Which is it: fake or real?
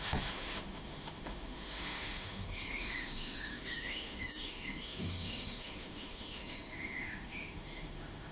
fake